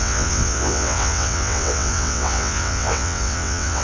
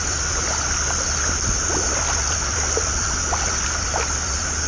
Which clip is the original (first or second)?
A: second